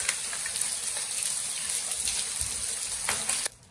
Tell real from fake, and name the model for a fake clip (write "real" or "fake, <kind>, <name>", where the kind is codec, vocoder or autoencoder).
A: real